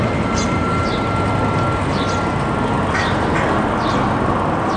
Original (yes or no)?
yes